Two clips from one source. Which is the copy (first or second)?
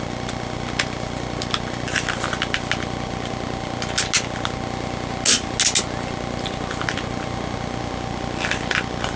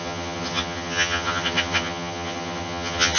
second